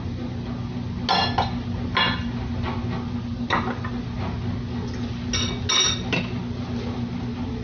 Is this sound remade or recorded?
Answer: recorded